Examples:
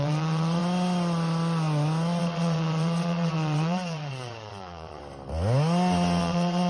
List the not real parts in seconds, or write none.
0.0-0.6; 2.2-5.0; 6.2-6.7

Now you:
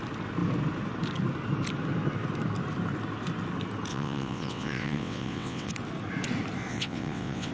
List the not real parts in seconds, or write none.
3.9-5.7; 6.7-7.5

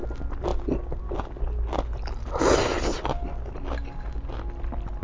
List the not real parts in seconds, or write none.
none

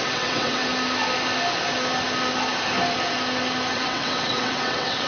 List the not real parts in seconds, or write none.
0.0-0.6; 3.7-5.1

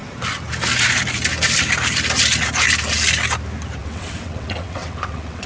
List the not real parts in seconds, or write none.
3.8-5.5

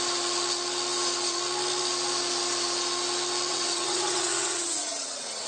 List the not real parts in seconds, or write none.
3.5-5.5

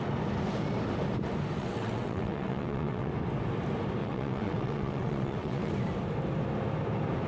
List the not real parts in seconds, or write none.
1.6-3.1; 4.0-5.7

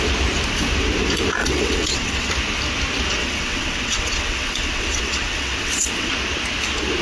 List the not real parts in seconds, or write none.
1.4-2.3; 3.2-6.1